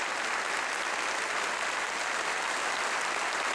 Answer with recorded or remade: recorded